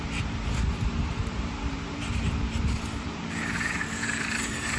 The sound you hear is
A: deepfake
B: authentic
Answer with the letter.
A